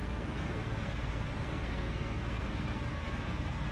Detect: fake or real fake